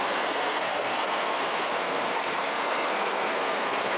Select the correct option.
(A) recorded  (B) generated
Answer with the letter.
B